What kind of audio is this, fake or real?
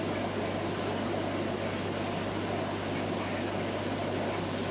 real